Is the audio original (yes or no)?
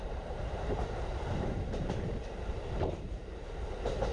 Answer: no